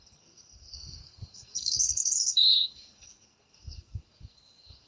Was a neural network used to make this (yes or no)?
yes